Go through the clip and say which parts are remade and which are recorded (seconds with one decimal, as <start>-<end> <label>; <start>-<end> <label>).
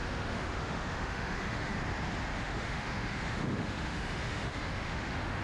0.0-1.8 remade; 1.8-2.3 recorded; 2.3-5.4 remade